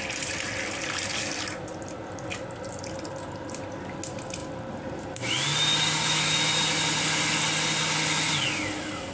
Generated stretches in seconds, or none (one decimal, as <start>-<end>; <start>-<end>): none